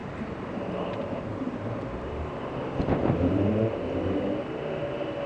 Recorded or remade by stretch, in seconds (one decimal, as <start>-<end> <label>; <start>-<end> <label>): 0.0-2.6 remade; 2.6-3.0 recorded; 3.0-3.5 remade; 3.5-5.3 recorded